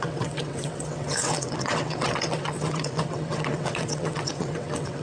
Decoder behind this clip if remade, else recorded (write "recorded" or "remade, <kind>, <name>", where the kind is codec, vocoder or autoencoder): remade, vocoder, WaveNeXt